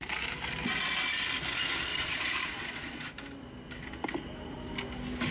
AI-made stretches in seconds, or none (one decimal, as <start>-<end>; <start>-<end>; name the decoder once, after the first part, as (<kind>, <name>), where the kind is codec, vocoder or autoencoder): 1.9-3.1 (vocoder, Vocos)